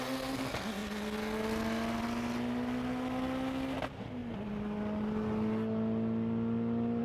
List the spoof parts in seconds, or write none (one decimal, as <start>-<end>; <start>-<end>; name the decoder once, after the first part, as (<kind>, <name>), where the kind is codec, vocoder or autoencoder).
none